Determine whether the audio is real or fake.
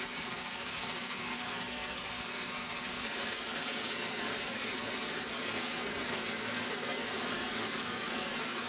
fake